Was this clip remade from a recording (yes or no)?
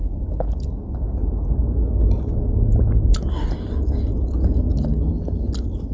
no